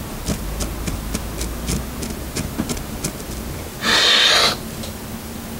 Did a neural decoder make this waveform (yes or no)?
no